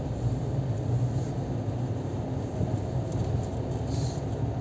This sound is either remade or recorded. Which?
recorded